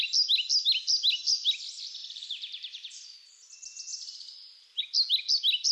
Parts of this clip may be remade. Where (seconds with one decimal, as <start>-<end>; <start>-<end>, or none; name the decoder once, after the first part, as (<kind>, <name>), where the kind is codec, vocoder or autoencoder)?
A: 2.0-3.5 (vocoder, BigVGAN v2)